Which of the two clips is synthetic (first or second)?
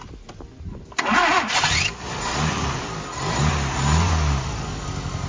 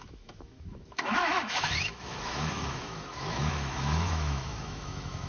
second